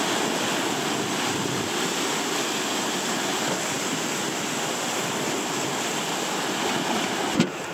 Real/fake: real